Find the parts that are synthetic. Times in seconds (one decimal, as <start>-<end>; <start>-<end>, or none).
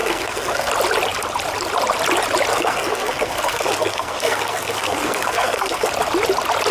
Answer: 0.0-0.7; 2.5-5.9